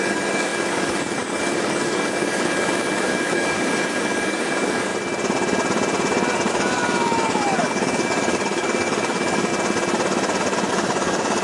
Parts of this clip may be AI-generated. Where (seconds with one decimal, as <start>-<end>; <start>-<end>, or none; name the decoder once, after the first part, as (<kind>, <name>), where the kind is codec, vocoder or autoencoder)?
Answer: 0.0-4.9 (codec, DAC); 6.5-9.5; 10.7-11.4